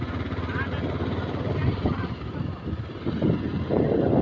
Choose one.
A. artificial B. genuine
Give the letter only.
B